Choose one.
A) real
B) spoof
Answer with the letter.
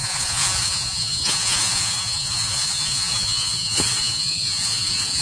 B